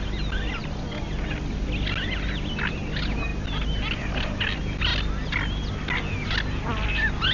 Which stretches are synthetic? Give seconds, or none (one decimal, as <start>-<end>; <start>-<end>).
none